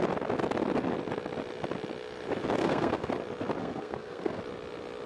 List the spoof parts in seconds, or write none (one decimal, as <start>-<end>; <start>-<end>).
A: 2.6-3.1; 3.6-4.4